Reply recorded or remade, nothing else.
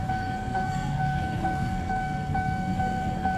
remade